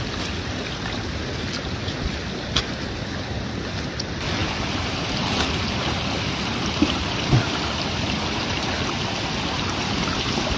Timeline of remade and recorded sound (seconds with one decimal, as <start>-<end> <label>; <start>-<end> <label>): 0.0-4.4 recorded; 4.4-5.9 remade; 5.9-10.6 recorded